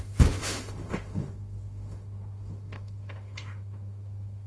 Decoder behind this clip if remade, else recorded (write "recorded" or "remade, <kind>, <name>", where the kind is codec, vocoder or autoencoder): remade, autoencoder, DAC-VAE